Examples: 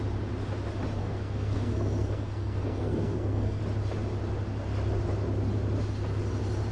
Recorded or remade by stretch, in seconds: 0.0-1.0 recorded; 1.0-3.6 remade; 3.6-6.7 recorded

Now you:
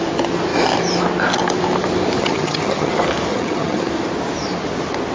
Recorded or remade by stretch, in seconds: 0.0-2.2 recorded; 2.2-2.9 remade; 2.9-3.3 recorded; 3.3-3.9 remade; 3.9-5.1 recorded

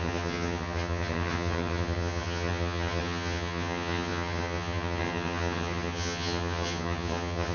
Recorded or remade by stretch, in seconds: 0.0-7.5 remade

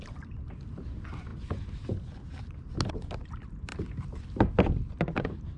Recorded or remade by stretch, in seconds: 0.0-5.6 recorded

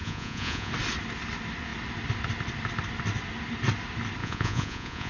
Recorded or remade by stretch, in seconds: 0.0-0.7 remade; 0.7-4.2 recorded; 4.2-5.1 remade

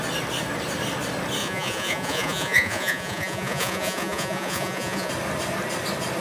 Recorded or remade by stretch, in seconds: 0.0-1.4 recorded; 1.4-5.1 remade; 5.1-6.2 recorded

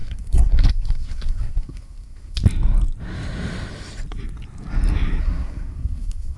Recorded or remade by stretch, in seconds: 0.0-2.4 remade; 2.4-5.2 recorded; 5.2-6.4 remade